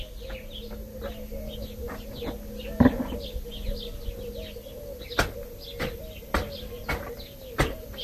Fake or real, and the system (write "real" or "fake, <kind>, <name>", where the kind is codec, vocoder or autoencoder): real